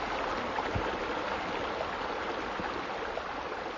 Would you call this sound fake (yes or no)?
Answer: no